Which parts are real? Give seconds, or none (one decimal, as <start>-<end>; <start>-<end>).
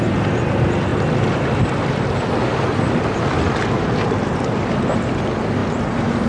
0.0-6.3